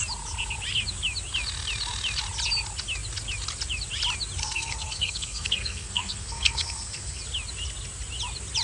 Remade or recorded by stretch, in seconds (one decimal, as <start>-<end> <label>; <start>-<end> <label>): 0.0-4.4 recorded; 4.4-7.2 remade; 7.2-8.6 recorded